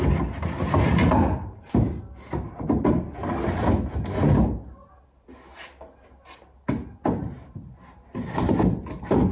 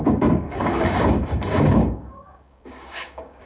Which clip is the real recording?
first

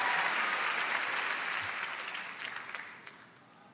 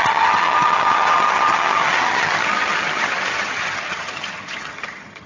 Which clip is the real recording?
first